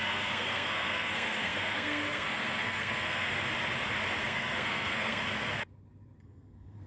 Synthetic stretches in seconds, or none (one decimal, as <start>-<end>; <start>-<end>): 0.0-3.3; 4.2-5.2; 6.2-6.9